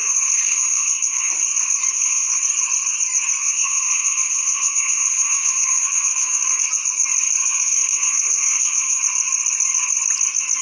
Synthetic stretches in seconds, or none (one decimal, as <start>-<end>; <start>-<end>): 0.0-1.3; 1.9-2.4; 3.4-6.6; 7.4-9.0